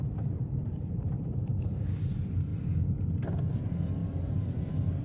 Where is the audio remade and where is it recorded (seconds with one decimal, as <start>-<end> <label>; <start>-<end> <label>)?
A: 0.0-1.7 remade; 1.7-4.0 recorded; 4.0-5.0 remade